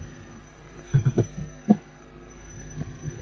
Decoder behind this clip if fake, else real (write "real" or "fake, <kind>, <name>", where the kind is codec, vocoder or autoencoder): fake, codec, SNAC